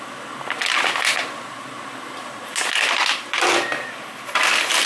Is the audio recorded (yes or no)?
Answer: yes